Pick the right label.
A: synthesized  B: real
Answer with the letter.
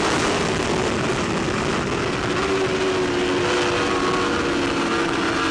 B